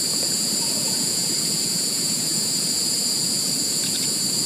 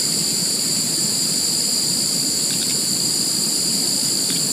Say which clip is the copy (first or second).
first